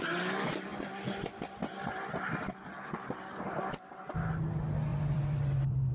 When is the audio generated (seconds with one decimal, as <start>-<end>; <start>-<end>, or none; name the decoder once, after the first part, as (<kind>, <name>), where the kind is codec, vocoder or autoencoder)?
4.9-5.9 (vocoder, BigVGAN v2)